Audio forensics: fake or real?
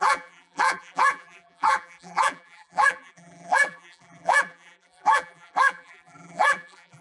fake